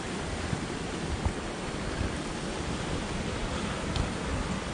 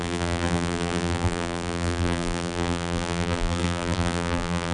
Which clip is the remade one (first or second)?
second